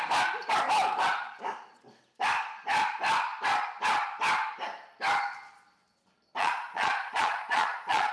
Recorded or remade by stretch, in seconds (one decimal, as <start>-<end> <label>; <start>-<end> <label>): 0.0-6.4 recorded; 6.4-8.1 remade